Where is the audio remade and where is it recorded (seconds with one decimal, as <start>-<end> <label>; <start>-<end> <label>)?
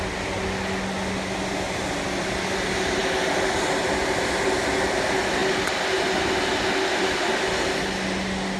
0.0-8.6 recorded